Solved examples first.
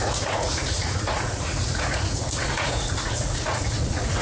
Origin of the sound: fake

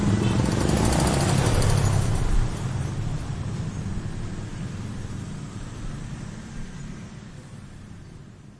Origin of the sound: real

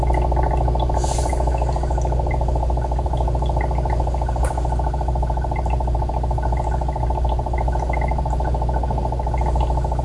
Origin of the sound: real